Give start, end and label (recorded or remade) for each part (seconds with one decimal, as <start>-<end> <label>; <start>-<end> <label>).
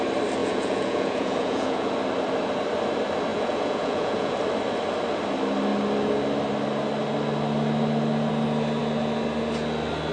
0.0-0.4 recorded; 0.4-1.9 remade; 1.9-3.3 recorded; 3.3-4.4 remade; 4.4-10.1 recorded